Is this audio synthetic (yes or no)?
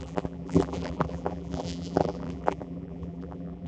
yes